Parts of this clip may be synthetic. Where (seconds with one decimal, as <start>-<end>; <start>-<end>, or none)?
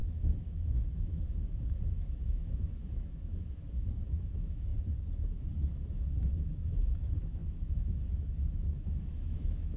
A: 0.0-4.7; 5.5-9.8